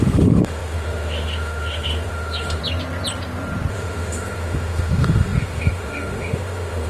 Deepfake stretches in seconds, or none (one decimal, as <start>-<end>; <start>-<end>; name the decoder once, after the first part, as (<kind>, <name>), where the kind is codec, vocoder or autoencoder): 0.0-2.6 (autoencoder, DAC-VAE); 3.7-6.9